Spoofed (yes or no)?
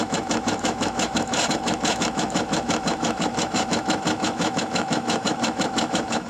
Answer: yes